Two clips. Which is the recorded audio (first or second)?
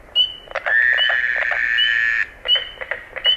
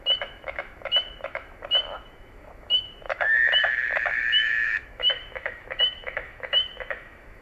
first